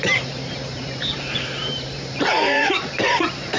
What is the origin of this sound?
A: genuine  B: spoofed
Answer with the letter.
B